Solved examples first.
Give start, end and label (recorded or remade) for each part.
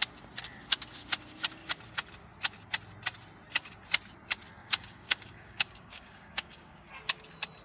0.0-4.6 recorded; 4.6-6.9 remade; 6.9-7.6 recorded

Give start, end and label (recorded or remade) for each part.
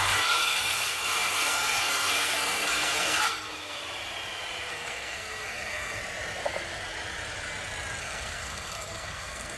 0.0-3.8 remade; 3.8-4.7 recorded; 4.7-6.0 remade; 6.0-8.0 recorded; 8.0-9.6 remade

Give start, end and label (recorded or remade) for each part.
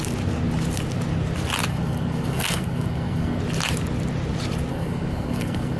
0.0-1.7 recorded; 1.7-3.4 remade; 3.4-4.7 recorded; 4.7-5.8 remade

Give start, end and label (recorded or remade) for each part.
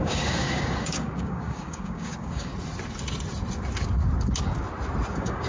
0.0-2.5 remade; 2.5-5.1 recorded; 5.1-5.5 remade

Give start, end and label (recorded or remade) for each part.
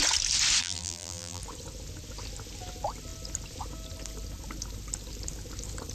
0.0-0.6 recorded; 0.6-1.4 remade; 1.4-5.9 recorded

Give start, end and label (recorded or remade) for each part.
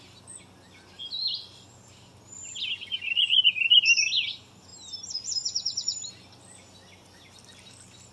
0.0-8.1 recorded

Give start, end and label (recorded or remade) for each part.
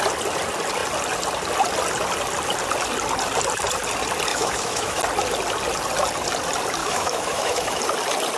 0.0-4.3 recorded; 4.3-5.0 remade; 5.0-6.8 recorded; 6.8-7.8 remade; 7.8-8.4 recorded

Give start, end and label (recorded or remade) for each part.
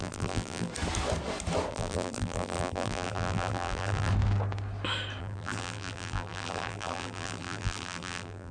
0.0-0.7 remade; 0.7-1.7 recorded; 1.7-4.1 remade; 4.1-5.2 recorded; 5.2-8.5 remade